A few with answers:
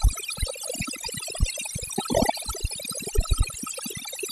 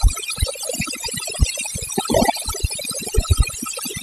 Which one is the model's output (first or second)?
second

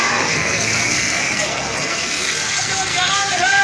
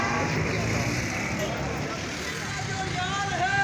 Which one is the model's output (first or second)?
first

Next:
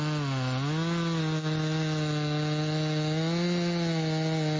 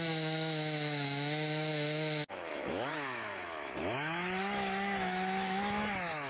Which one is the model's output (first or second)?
second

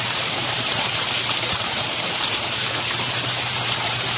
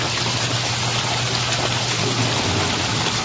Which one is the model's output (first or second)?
first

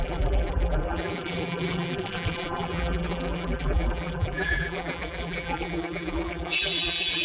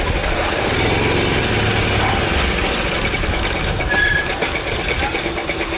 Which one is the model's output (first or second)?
first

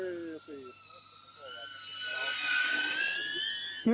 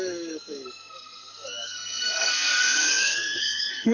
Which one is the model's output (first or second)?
second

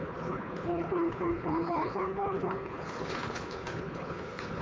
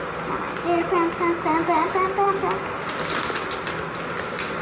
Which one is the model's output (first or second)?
first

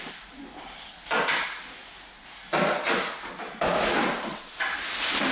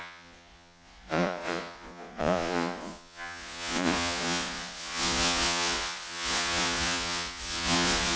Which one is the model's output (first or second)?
second